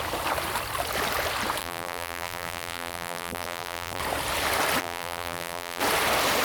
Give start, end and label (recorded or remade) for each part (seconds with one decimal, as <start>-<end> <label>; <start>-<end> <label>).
0.0-1.6 recorded; 1.6-4.0 remade; 4.0-4.8 recorded; 4.8-5.8 remade; 5.8-6.4 recorded